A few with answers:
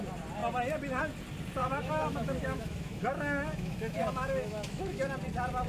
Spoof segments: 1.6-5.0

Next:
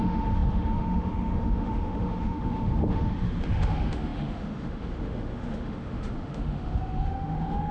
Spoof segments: 0.0-7.7

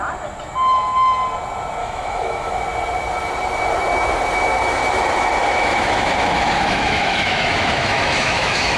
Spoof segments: 1.8-2.6; 5.5-8.8

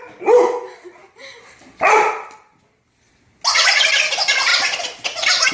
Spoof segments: none

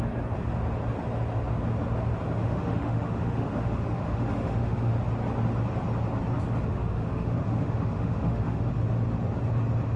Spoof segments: 2.4-5.0; 6.7-8.7